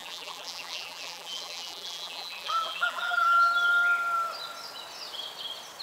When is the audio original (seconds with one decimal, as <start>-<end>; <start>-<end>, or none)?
3.5-5.8